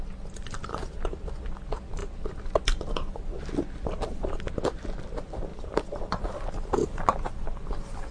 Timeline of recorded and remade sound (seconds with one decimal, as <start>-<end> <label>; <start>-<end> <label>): 0.0-0.7 recorded; 0.7-1.3 remade; 1.3-5.5 recorded; 5.5-6.1 remade; 6.1-6.8 recorded; 6.8-7.6 remade; 7.6-8.1 recorded